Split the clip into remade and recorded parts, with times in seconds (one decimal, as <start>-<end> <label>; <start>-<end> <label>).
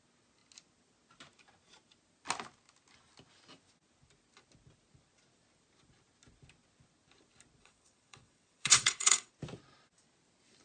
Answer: 0.0-7.6 recorded; 7.6-9.3 remade; 9.3-10.6 recorded